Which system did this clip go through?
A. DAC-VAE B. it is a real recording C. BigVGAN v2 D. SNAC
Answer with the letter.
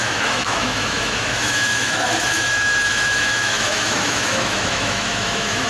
A